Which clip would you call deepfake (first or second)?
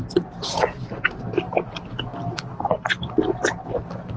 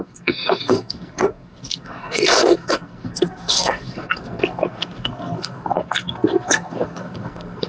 second